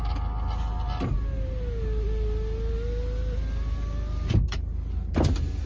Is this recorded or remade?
recorded